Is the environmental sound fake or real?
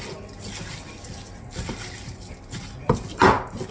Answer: real